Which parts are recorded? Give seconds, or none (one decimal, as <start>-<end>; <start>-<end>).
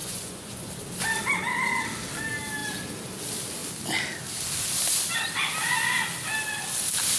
0.7-7.2